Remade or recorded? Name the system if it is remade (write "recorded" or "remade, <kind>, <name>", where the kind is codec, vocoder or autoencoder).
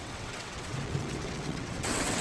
remade, vocoder, WaveNeXt